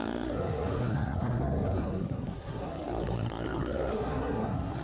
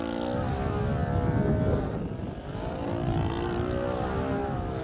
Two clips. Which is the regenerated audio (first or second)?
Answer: first